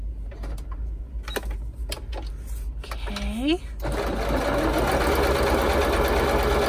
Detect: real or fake real